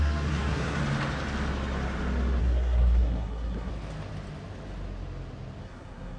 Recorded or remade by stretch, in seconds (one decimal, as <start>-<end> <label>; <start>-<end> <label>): 0.0-0.8 remade; 0.8-2.4 recorded; 2.4-3.7 remade; 3.7-5.6 recorded; 5.6-6.2 remade